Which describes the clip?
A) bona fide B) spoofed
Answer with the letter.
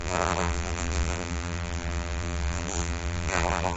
B